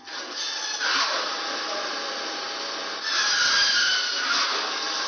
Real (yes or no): yes